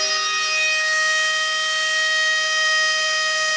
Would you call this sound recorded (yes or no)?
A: yes